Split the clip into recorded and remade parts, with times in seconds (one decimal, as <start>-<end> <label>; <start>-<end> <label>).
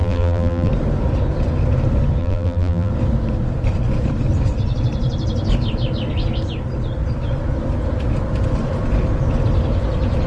0.0-0.7 remade; 0.7-2.2 recorded; 2.2-2.9 remade; 2.9-10.3 recorded